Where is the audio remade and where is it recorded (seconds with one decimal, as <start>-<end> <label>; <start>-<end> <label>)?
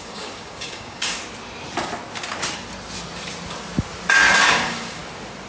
0.0-1.2 remade; 1.2-4.5 recorded; 4.5-5.0 remade; 5.0-5.5 recorded